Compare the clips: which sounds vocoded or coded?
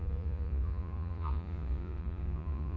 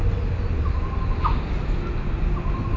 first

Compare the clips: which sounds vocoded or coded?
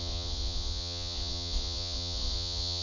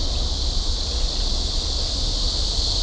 first